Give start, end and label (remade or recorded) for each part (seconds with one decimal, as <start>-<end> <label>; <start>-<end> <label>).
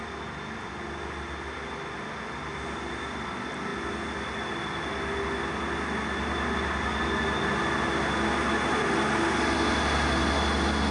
0.0-10.9 recorded